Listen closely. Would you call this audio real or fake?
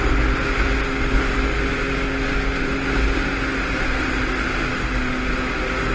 real